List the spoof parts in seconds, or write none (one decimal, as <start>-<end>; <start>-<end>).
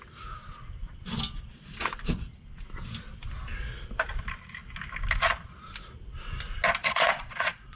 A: 1.3-1.9; 6.8-7.8